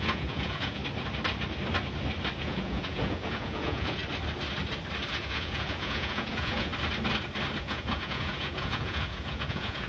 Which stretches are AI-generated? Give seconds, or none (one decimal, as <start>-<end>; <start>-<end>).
0.0-0.8; 2.4-4.0; 5.2-6.7; 7.6-9.9